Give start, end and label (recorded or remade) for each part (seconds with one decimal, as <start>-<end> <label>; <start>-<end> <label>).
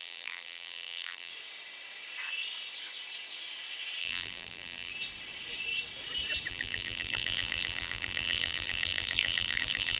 0.0-1.3 remade; 1.3-4.0 recorded; 4.0-4.9 remade; 4.9-6.5 recorded; 6.5-10.0 remade